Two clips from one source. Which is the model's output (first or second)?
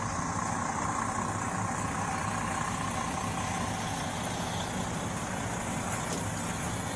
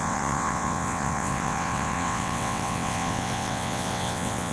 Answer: second